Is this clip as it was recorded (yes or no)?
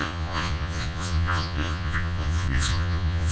no